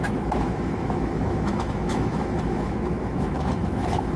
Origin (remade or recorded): remade